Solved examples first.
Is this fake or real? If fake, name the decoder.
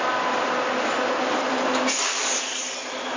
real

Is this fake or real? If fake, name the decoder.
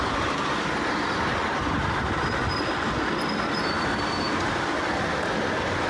real